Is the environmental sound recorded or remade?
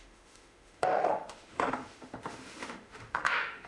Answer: remade